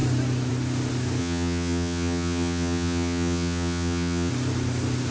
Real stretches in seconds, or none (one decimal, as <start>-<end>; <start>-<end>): 0.0-1.2; 4.3-5.1